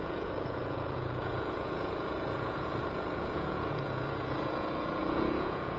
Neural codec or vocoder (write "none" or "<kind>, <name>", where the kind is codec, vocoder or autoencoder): vocoder, Vocos